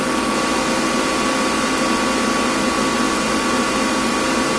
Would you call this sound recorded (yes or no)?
yes